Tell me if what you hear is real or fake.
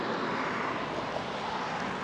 real